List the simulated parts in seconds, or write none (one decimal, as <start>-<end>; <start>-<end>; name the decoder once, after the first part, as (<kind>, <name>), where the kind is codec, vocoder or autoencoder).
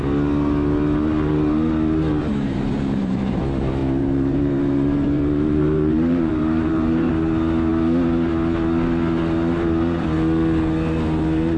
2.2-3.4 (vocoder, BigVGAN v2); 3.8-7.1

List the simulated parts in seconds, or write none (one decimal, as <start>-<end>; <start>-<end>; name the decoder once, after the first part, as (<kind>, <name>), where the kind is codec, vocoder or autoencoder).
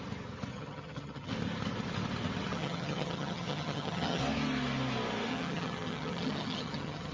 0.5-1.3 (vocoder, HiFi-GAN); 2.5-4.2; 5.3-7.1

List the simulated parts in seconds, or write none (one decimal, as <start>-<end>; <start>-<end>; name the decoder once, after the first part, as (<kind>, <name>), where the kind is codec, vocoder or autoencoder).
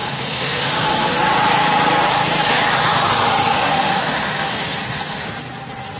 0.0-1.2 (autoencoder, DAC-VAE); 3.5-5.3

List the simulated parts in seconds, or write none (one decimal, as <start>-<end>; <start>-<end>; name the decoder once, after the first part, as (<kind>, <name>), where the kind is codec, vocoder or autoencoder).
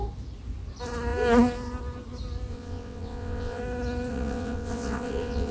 2.5-3.6 (vocoder, WaveNeXt); 4.1-5.5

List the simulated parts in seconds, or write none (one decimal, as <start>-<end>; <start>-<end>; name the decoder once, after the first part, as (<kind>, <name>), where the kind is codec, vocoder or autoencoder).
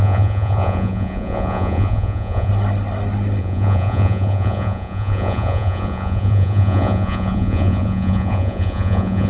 0.0-2.5 (vocoder, Vocos); 3.4-9.3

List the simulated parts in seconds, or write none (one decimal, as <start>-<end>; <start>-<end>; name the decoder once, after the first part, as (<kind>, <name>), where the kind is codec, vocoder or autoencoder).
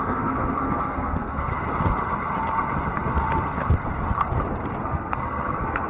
0.0-1.5 (codec, SNAC); 4.8-5.9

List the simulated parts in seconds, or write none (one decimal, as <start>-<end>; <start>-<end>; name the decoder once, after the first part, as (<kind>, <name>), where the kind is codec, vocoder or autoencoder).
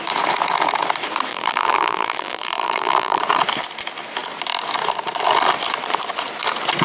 1.3-3.2 (vocoder, BigVGAN v2)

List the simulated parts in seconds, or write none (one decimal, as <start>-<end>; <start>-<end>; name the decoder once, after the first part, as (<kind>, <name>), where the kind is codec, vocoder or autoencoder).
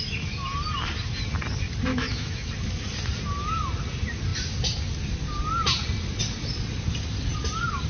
1.9-2.5 (autoencoder, DAC-VAE)